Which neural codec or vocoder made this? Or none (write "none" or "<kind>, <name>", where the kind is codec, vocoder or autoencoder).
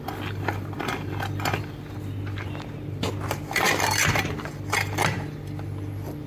vocoder, BigVGAN v2